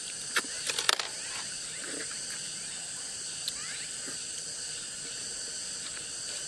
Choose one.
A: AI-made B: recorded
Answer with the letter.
B